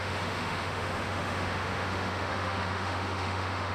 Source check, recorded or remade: remade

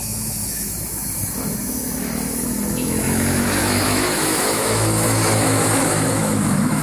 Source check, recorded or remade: remade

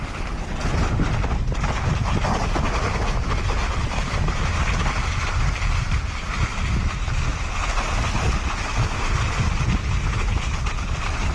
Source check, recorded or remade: recorded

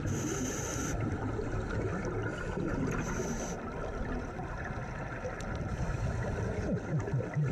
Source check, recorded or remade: recorded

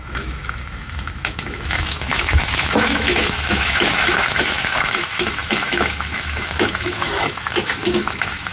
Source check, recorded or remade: remade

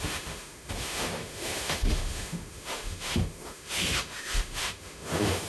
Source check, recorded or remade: remade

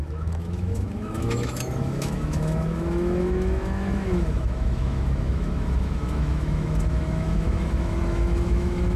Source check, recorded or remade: remade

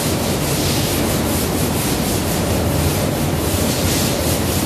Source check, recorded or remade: recorded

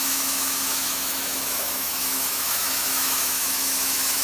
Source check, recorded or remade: remade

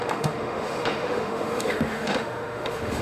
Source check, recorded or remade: remade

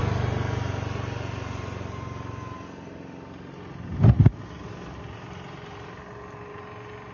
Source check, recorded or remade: recorded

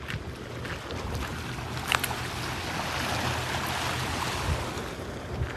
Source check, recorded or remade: recorded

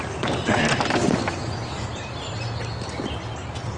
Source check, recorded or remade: recorded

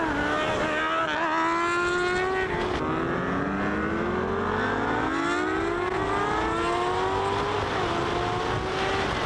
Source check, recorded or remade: recorded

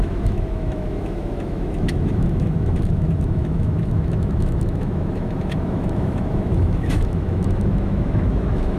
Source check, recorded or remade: remade